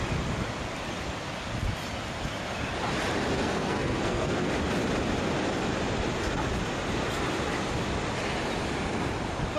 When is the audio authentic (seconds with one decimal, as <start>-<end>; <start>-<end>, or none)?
0.0-3.4; 4.5-9.6